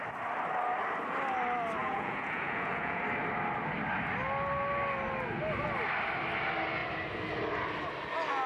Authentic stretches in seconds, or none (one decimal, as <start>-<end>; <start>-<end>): 0.0-1.8; 3.0-8.5